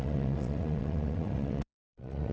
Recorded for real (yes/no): no